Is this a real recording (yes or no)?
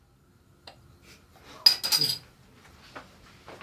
yes